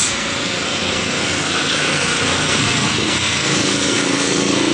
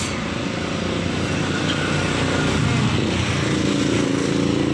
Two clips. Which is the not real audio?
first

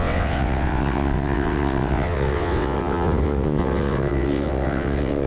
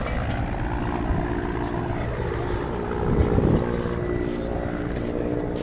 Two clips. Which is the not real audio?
first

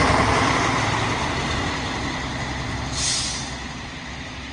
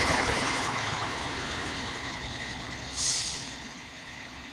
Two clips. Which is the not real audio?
second